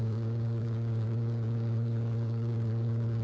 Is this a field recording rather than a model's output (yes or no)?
no